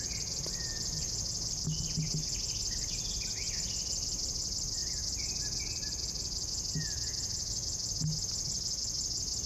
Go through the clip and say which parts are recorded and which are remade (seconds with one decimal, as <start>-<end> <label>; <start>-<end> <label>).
0.0-9.5 recorded